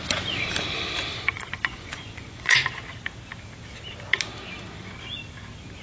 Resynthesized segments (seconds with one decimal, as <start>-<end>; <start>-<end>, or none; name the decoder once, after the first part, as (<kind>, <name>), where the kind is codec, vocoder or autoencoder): 1.1-2.6 (vocoder, Vocos)